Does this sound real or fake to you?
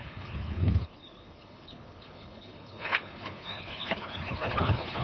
fake